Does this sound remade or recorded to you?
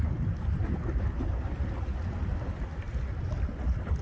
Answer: recorded